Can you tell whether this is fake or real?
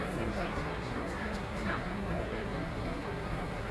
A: fake